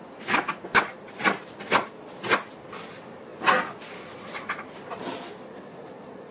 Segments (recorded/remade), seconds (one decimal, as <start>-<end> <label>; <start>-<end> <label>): 0.0-6.3 recorded